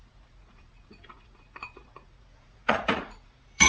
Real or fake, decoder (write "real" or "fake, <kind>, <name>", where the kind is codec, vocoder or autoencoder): fake, vocoder, Vocos